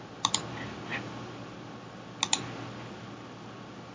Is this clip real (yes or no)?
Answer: yes